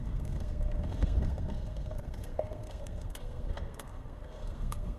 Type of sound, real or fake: fake